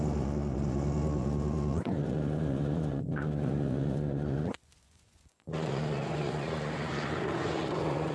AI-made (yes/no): yes